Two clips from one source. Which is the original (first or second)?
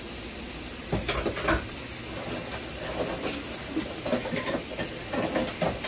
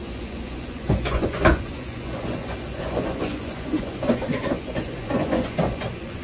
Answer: first